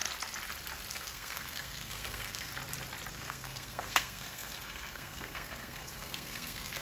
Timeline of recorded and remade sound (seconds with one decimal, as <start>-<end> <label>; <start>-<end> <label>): 0.0-0.9 recorded; 0.9-2.5 remade; 2.5-3.1 recorded; 3.1-6.8 remade